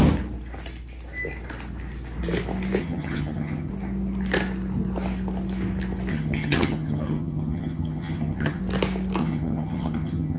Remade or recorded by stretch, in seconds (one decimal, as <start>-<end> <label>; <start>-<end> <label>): 0.0-2.8 recorded; 2.8-3.7 remade; 3.7-6.1 recorded; 6.1-8.6 remade; 8.6-9.2 recorded; 9.2-10.4 remade